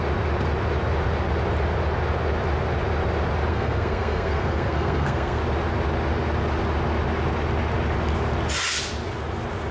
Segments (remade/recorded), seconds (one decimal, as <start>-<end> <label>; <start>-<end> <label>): 0.0-3.5 recorded; 3.5-5.4 remade; 5.4-9.7 recorded